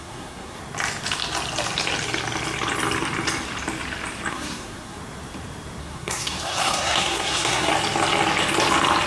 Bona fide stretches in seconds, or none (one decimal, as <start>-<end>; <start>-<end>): 0.6-4.3; 5.0-5.8; 7.7-9.1

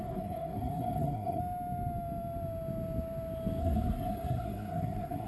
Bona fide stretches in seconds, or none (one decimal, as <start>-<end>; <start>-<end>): 1.4-3.6

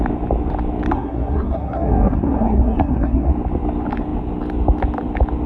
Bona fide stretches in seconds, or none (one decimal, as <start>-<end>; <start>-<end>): 0.0-0.9; 3.3-5.5

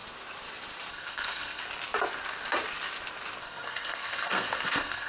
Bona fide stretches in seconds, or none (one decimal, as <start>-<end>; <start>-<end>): 0.0-0.9; 1.6-3.4

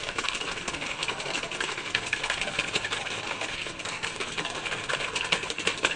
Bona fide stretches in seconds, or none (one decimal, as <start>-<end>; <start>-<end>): none

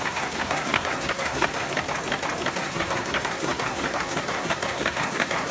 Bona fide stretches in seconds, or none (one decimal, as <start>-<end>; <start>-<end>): 1.7-2.5